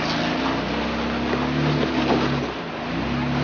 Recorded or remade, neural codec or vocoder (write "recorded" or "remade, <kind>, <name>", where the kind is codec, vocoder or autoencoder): recorded